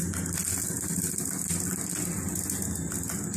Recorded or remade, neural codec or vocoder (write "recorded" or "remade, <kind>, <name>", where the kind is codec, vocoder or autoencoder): recorded